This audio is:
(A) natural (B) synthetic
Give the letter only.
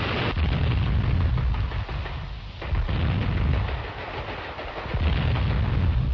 A